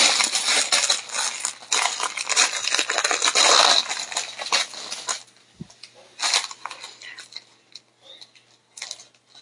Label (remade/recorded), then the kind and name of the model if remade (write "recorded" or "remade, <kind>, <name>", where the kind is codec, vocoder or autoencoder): recorded